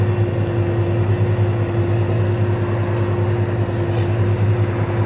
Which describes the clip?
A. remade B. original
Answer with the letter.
B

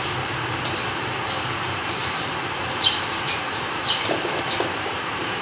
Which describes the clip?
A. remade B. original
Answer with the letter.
A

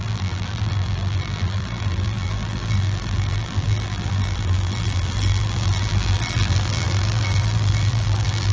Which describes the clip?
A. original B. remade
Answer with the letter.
B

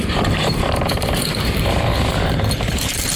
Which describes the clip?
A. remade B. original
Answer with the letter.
A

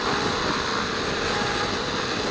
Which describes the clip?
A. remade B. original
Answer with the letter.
B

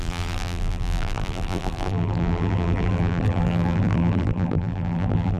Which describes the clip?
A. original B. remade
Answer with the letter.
B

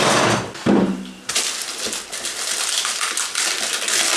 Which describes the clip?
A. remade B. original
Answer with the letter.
B